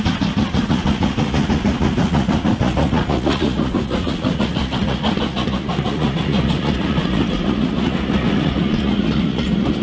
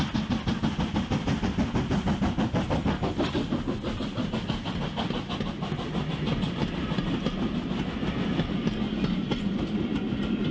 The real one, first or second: second